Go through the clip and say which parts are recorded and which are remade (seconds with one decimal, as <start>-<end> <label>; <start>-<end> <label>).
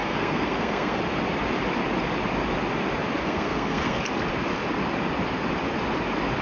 0.0-1.0 remade; 1.0-3.2 recorded; 3.2-4.0 remade; 4.0-6.4 recorded